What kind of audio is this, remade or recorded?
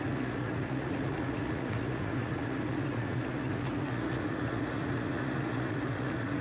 remade